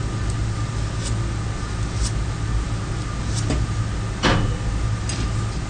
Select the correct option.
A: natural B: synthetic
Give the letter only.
A